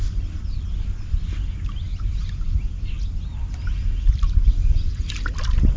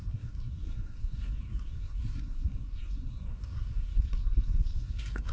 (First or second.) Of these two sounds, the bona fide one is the first